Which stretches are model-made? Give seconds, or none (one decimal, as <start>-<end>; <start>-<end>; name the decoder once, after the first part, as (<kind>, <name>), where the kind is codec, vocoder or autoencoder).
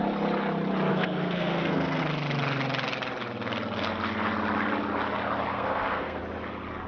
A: 0.9-2.0 (codec, SNAC); 5.5-6.2